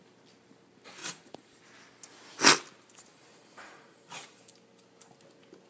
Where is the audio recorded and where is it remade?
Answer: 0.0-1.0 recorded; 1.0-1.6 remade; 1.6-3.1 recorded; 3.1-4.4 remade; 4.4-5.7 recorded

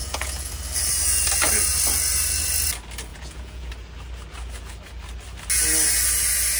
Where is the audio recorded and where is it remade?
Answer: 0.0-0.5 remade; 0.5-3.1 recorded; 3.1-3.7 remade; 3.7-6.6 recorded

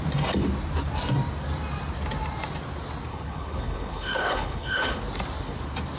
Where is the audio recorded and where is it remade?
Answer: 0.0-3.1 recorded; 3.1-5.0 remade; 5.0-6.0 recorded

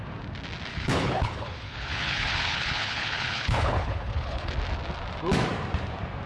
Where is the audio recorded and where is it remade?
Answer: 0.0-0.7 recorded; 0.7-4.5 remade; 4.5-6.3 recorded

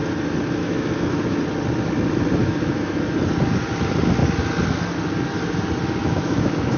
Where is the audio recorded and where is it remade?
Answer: 0.0-0.6 recorded; 0.6-1.4 remade; 1.4-2.4 recorded; 2.4-3.0 remade; 3.0-6.0 recorded; 6.0-6.8 remade